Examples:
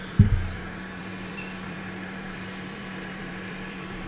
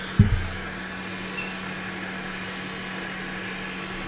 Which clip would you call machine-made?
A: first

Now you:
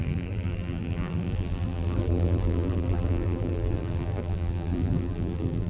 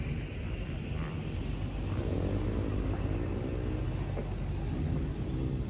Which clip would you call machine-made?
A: first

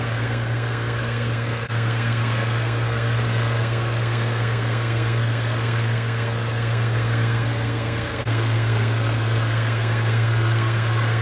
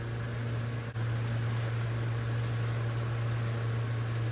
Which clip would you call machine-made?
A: first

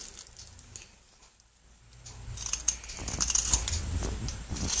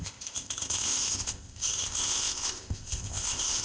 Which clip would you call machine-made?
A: second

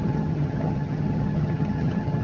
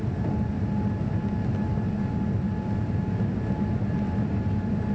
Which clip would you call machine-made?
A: first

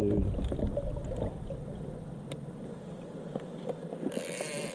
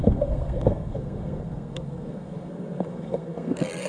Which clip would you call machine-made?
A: second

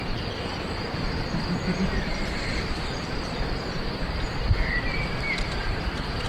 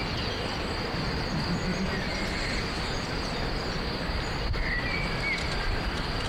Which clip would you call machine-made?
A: first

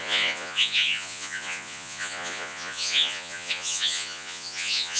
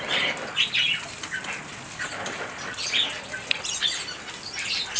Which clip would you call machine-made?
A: first